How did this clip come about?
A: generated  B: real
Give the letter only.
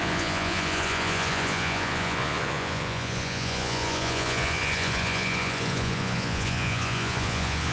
A